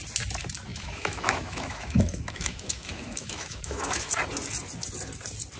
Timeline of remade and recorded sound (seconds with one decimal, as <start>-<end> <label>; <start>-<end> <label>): 0.0-0.7 recorded; 0.7-4.1 remade; 4.1-5.6 recorded